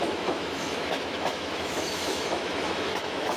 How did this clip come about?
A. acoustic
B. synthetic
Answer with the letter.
B